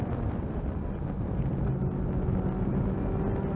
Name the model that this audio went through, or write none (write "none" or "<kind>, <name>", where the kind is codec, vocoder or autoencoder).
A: none